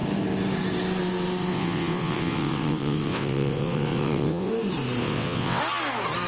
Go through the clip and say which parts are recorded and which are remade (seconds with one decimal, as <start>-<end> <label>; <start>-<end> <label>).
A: 0.0-1.5 recorded; 1.5-4.5 remade; 4.5-5.0 recorded; 5.0-5.6 remade; 5.6-6.3 recorded